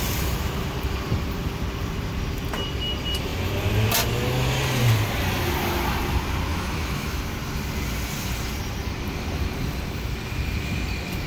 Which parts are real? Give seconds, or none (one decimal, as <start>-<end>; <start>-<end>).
0.0-6.5; 7.2-11.3